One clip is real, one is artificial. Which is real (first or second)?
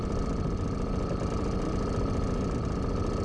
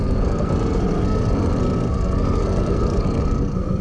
first